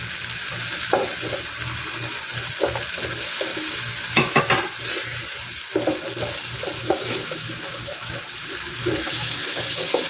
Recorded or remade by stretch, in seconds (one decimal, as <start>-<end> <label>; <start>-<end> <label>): 0.0-3.5 recorded; 3.5-4.4 remade; 4.4-6.8 recorded; 6.8-8.2 remade; 8.2-8.8 recorded; 8.8-9.6 remade; 9.6-10.1 recorded